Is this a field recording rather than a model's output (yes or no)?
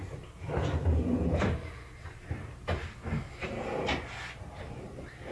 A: yes